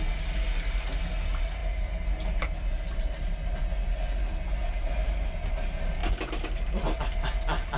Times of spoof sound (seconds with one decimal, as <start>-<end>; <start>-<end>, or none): none